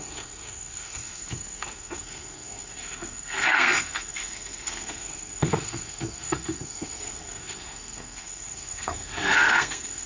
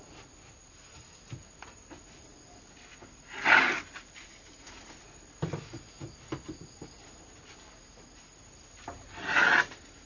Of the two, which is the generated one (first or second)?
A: first